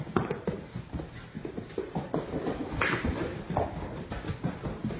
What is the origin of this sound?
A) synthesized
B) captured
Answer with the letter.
B